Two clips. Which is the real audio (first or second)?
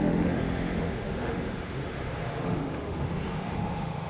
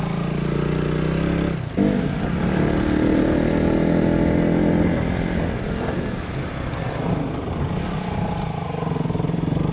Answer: second